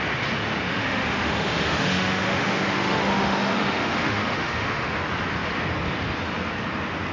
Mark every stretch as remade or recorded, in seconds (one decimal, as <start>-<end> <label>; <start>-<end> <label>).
0.0-0.7 recorded; 0.7-5.0 remade; 5.0-7.1 recorded